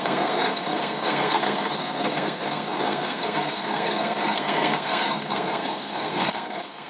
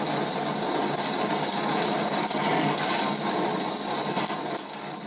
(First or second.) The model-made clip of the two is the first